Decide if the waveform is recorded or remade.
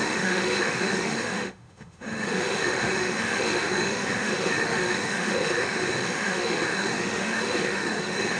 remade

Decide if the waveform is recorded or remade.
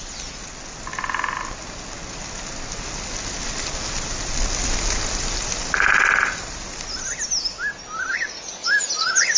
recorded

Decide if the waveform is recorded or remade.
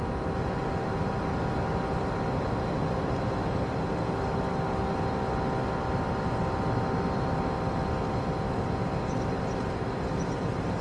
recorded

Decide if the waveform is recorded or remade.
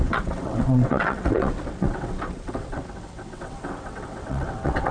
remade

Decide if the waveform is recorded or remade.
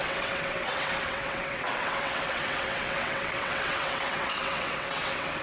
remade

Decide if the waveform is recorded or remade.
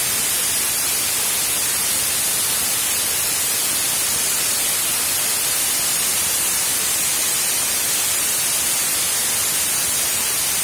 recorded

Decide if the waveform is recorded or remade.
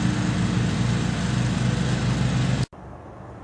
recorded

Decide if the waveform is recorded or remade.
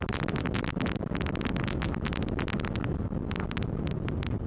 recorded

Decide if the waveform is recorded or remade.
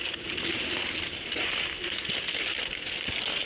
recorded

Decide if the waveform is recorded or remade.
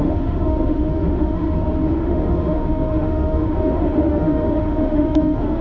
remade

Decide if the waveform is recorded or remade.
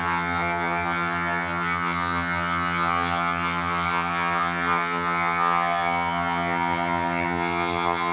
remade